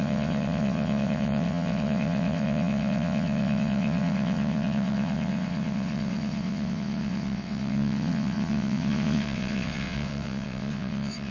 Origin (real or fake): fake